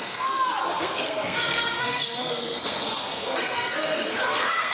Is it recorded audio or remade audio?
remade